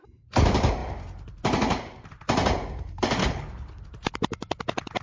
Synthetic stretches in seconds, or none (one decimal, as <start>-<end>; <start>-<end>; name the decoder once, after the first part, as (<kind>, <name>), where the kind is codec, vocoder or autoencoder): 3.2-3.8 (codec, HILCodec)